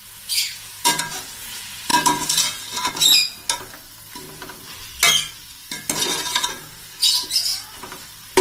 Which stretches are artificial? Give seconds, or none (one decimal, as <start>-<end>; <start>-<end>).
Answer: 0.0-3.4; 6.2-7.5